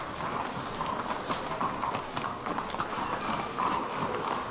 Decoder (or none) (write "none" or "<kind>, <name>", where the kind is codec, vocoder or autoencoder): none